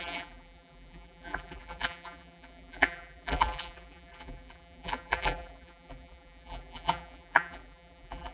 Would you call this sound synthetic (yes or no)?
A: yes